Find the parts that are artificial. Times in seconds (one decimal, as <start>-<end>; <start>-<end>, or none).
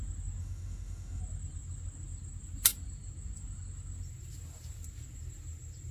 0.4-1.2